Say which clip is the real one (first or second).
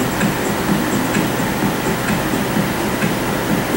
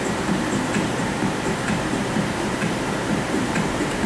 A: first